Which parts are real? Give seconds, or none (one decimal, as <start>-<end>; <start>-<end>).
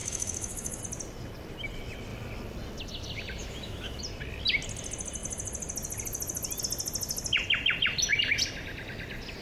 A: 0.8-3.4; 4.0-9.4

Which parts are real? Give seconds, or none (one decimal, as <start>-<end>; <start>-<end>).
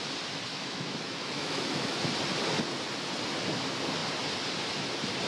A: 0.0-0.5; 2.0-5.3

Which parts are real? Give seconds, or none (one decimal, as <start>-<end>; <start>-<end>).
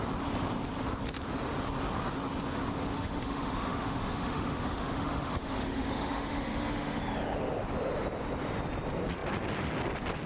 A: 0.0-2.9; 7.0-10.3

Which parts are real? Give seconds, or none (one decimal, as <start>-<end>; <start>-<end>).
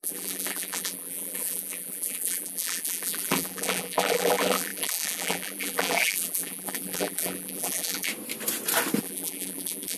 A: 8.1-9.0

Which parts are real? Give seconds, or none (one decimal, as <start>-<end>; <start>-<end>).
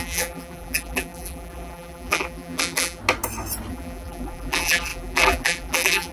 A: 3.0-3.7